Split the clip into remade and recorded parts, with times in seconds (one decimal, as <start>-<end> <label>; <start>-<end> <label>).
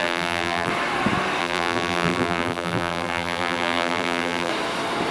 0.0-0.7 remade; 0.7-1.4 recorded; 1.4-4.5 remade; 4.5-5.1 recorded